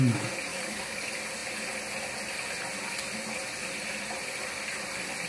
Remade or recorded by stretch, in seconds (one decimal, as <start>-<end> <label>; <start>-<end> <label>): 0.0-0.5 recorded; 0.5-1.0 remade; 1.0-5.3 recorded